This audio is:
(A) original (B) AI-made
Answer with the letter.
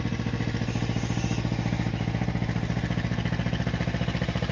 A